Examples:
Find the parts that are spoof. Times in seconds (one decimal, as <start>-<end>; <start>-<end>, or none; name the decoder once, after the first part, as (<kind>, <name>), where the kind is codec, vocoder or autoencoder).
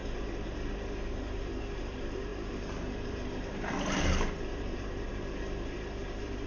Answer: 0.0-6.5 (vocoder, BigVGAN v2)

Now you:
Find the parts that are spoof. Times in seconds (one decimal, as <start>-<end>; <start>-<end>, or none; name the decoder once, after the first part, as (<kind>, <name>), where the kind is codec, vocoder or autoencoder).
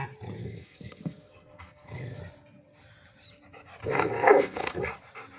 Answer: 0.4-2.2 (codec, SNAC); 3.8-4.8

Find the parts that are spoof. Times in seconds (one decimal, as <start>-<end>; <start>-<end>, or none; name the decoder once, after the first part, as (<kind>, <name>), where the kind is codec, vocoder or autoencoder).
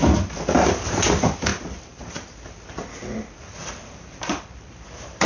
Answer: 1.5-2.0 (vocoder, BigVGAN v2); 3.6-5.3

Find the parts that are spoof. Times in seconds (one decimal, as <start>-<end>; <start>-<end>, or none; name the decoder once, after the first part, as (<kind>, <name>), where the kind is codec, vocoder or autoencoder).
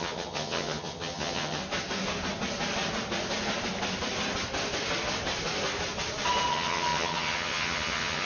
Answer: 0.0-1.6 (vocoder, HiFi-GAN); 6.5-8.2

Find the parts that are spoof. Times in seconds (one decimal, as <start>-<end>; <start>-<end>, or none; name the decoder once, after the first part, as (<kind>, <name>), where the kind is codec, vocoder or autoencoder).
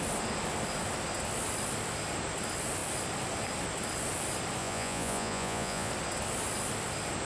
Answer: 4.6-5.9 (vocoder, Vocos)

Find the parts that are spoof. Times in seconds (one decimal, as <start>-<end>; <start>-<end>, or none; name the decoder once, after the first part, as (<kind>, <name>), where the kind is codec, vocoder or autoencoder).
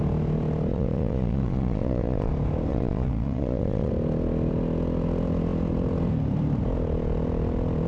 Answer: 0.7-2.3 (vocoder, Vocos); 2.7-3.9